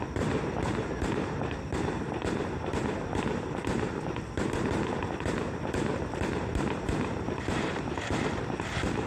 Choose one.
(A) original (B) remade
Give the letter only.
B